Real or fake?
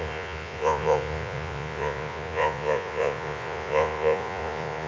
fake